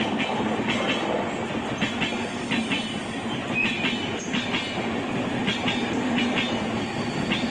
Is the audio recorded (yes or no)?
yes